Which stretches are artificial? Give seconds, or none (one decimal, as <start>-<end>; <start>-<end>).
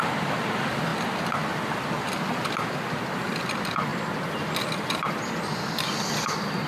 0.0-0.9; 3.4-3.9; 4.7-6.7